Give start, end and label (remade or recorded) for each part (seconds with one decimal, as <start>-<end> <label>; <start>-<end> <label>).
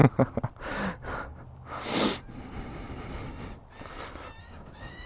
0.0-4.4 recorded; 4.4-5.1 remade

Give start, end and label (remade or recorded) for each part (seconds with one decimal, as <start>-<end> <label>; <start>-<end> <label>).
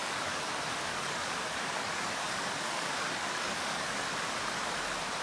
0.0-0.5 remade; 0.5-0.9 recorded; 0.9-4.0 remade; 4.0-5.2 recorded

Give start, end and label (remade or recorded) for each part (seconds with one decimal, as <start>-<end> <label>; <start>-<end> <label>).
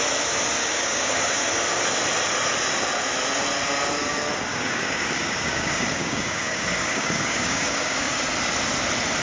0.0-0.6 recorded; 0.6-1.5 remade; 1.5-4.5 recorded; 4.5-8.2 remade; 8.2-9.2 recorded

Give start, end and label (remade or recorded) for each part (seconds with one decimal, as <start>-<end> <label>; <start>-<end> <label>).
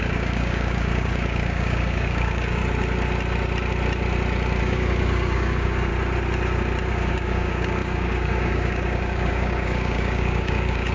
0.0-2.6 remade; 2.6-4.6 recorded; 4.6-5.9 remade; 5.9-6.9 recorded; 6.9-10.9 remade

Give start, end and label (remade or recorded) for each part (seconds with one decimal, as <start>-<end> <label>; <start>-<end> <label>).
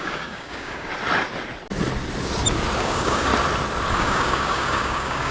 0.0-0.9 remade; 0.9-2.8 recorded; 2.8-3.3 remade; 3.3-3.9 recorded; 3.9-5.3 remade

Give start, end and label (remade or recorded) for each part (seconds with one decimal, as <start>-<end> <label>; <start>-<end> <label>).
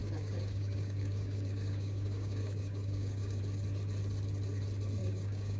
0.0-3.4 remade; 3.4-5.0 recorded; 5.0-5.6 remade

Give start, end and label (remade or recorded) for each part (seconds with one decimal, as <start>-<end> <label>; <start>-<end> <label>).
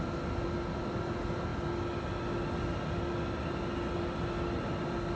0.0-5.2 recorded